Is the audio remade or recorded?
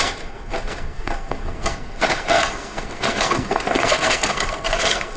remade